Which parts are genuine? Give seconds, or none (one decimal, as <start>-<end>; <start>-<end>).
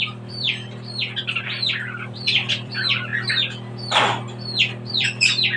3.1-4.9